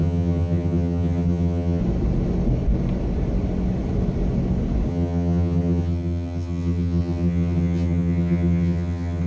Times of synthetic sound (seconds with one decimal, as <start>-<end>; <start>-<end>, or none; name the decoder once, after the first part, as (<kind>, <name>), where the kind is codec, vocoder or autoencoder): 0.0-1.8 (vocoder, HiFi-GAN); 4.9-9.3